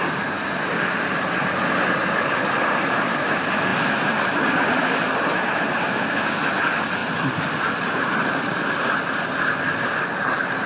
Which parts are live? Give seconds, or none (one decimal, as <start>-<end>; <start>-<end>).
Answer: 0.0-3.7; 4.7-7.0; 8.9-10.7